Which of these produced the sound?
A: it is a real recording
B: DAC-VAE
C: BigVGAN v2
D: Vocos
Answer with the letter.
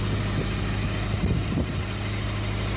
A